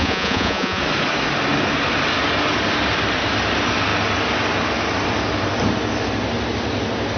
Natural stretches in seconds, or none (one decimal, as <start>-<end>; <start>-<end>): 0.8-7.2